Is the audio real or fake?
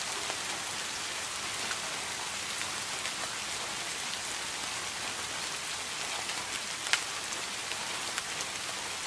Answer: real